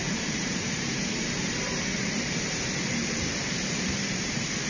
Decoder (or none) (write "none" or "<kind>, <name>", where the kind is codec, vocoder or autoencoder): vocoder, BigVGAN v2